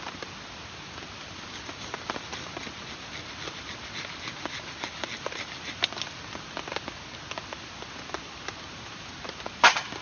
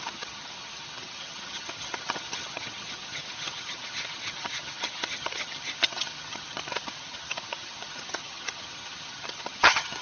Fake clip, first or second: second